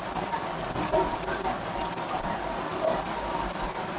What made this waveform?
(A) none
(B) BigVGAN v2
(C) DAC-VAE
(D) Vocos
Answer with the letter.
A